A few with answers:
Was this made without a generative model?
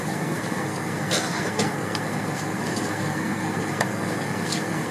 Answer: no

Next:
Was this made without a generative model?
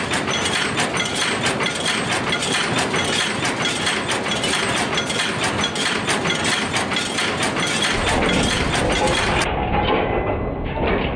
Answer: yes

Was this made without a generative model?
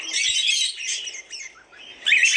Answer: yes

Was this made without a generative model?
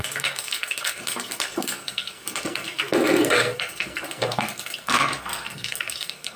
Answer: no